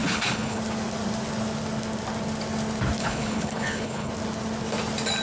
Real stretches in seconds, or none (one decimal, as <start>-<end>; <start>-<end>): 0.6-3.0; 4.1-5.2